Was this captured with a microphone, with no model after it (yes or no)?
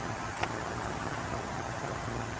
no